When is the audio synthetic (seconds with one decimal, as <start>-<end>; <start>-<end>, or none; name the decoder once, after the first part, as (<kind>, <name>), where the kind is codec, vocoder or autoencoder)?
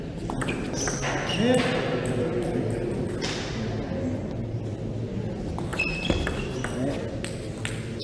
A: none